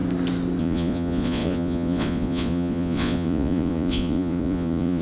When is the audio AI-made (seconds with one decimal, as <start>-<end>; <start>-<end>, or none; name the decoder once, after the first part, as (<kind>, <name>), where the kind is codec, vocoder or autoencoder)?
0.6-5.0 (vocoder, Vocos)